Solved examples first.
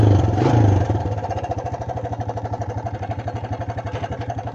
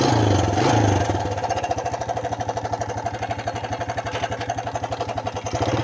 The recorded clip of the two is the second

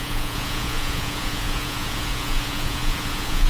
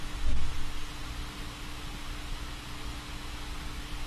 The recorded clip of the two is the second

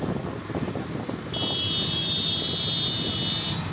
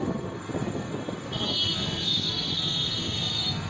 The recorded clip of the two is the first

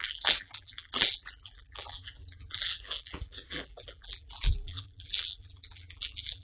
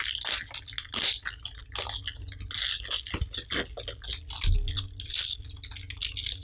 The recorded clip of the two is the second